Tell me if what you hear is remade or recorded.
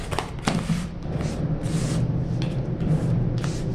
remade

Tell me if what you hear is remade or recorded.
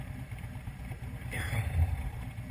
remade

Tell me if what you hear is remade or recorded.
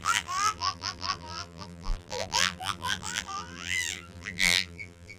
remade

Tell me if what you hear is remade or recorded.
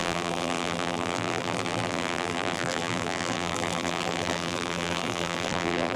remade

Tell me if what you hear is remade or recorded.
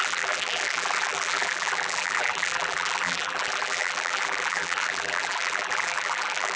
remade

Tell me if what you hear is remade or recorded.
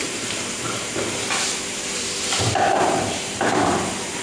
remade